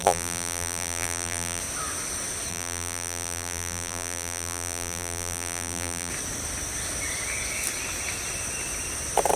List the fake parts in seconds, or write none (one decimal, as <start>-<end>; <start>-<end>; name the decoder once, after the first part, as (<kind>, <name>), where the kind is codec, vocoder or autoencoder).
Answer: 0.0-1.6 (vocoder, BigVGAN v2); 2.5-6.1